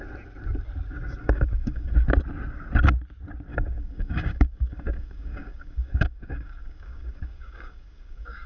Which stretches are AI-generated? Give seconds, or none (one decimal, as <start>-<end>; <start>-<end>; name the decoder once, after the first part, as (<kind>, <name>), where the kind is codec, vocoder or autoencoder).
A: 1.2-1.9 (codec, DAC); 3.5-8.5